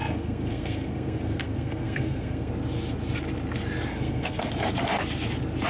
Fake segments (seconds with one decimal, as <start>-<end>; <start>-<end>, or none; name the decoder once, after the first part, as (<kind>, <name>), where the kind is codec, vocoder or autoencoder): 0.0-2.5 (codec, SNAC); 3.9-4.5